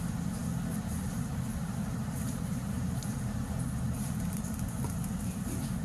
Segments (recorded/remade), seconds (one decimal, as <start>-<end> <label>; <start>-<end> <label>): 0.0-1.6 recorded; 1.6-3.5 remade; 3.5-5.8 recorded